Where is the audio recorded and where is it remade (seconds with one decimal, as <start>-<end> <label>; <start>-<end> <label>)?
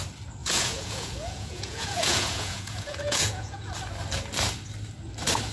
0.0-0.4 recorded; 0.4-3.7 remade; 3.7-5.5 recorded